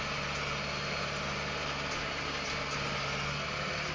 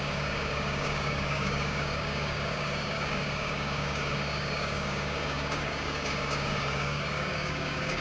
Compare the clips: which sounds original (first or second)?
first